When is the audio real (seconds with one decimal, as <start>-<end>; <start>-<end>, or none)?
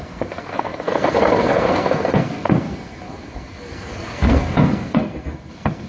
none